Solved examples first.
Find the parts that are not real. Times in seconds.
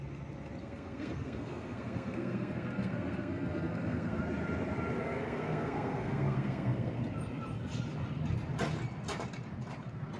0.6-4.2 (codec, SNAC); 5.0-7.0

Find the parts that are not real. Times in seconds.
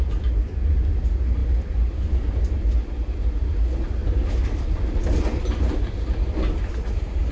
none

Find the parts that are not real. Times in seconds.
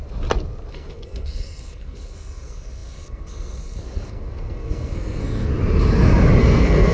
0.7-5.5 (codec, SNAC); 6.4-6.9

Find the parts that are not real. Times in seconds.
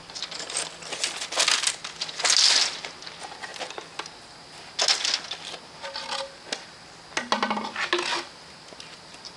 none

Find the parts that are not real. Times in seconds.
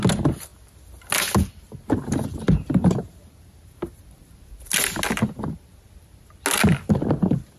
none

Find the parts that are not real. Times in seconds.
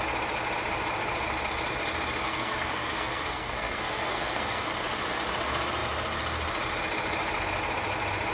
2.2-4.7 (codec, SNAC)